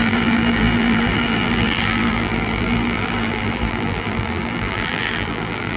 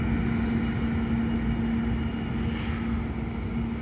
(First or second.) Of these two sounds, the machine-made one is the first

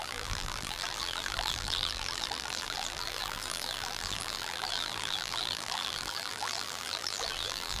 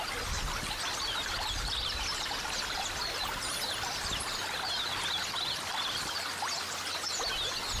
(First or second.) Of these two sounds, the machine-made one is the first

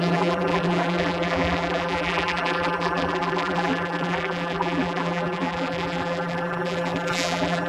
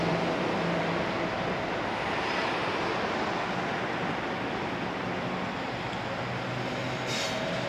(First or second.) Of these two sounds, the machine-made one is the first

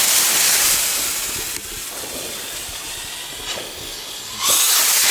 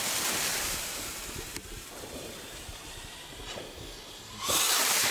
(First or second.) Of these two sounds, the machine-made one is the second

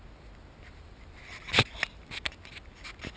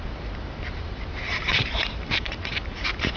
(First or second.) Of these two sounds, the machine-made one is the second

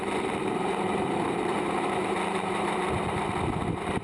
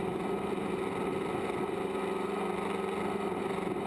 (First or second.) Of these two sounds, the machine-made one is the first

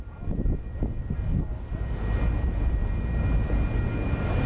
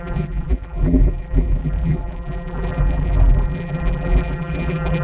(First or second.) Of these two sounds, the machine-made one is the second